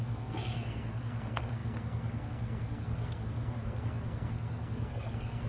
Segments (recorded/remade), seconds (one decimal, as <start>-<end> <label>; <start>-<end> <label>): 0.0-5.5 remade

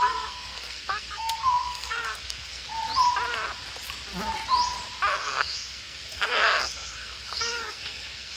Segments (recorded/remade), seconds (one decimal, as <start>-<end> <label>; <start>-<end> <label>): 0.0-2.7 remade; 2.7-5.1 recorded; 5.1-8.4 remade

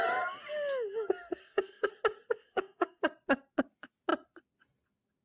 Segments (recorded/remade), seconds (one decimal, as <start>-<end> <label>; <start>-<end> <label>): 0.0-1.4 recorded; 1.4-1.9 remade; 1.9-2.4 recorded; 2.4-3.0 remade; 3.0-5.2 recorded